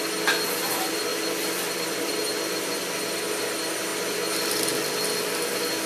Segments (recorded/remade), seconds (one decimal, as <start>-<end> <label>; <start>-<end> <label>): 0.0-1.1 recorded; 1.1-2.1 remade; 2.1-5.9 recorded